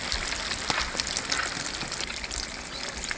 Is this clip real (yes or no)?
yes